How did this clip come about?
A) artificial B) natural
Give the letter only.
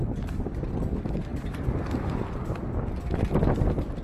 B